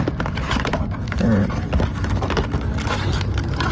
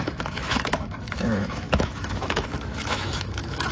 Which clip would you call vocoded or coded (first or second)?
second